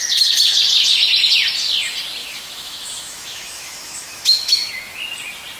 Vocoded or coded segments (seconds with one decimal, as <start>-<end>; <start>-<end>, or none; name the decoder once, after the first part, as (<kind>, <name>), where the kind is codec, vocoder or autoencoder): 2.2-4.7 (autoencoder, DAC-VAE)